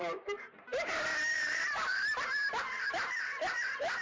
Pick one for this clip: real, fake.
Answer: fake